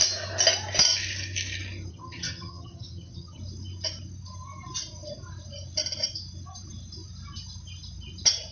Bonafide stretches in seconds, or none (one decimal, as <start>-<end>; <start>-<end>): 0.0-1.9; 3.4-8.5